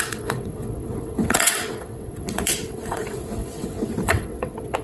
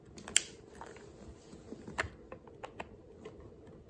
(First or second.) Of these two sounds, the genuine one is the second